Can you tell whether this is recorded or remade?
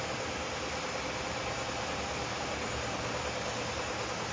recorded